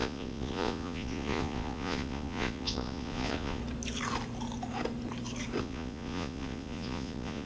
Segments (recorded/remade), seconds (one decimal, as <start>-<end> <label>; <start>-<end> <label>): 0.0-3.6 remade; 3.6-5.6 recorded; 5.6-7.5 remade